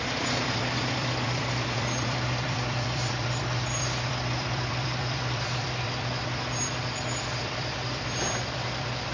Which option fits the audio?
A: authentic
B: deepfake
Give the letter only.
B